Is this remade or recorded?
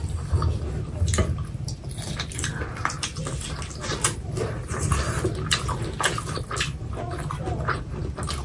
recorded